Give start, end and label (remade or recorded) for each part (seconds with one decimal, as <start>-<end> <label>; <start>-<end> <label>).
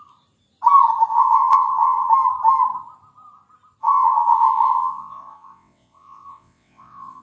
0.0-1.1 recorded; 1.1-2.1 remade; 2.1-3.8 recorded; 3.8-7.2 remade